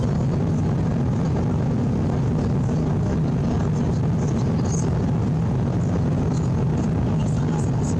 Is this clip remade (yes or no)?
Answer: no